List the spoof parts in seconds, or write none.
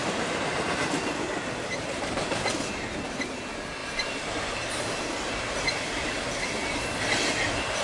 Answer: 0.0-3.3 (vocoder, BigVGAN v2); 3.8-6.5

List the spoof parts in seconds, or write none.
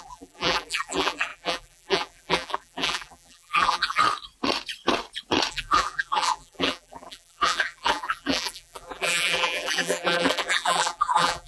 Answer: 0.0-4.0 (vocoder, BigVGAN v2); 5.5-11.5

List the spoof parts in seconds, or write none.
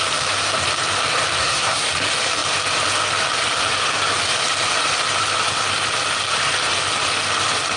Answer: 1.4-1.9 (codec, SNAC)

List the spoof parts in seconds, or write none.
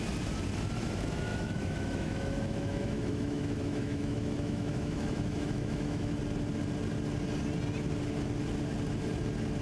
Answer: 1.3-6.2 (autoencoder, DAC-VAE)